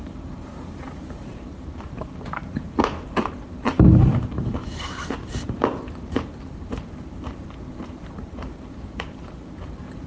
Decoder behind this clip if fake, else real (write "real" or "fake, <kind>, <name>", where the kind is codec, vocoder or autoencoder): fake, vocoder, BigVGAN v2